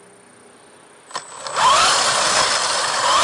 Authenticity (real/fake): real